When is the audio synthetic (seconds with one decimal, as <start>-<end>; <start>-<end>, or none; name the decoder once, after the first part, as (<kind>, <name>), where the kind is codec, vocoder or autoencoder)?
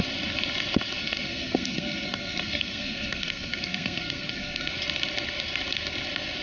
1.0-4.7 (codec, SNAC)